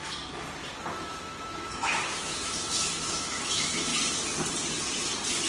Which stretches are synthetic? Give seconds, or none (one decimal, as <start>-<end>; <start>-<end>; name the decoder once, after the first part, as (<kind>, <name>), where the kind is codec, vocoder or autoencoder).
0.9-3.9 (autoencoder, DAC-VAE)